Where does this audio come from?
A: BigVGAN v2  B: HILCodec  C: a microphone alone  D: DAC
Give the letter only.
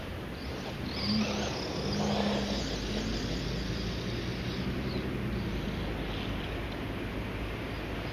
C